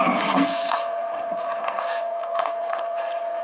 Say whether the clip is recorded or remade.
remade